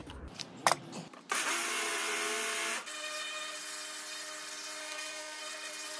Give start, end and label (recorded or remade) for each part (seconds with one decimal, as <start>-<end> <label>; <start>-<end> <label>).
0.0-4.8 recorded; 4.8-5.4 remade; 5.4-6.0 recorded